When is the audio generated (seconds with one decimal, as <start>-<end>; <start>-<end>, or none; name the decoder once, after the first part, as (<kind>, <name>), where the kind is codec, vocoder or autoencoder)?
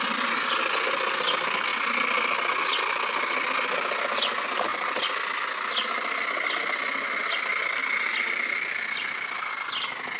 none